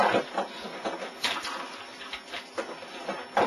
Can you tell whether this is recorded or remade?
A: recorded